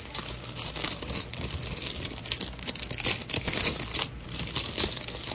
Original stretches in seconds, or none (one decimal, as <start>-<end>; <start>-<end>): 2.2-3.4; 3.9-4.4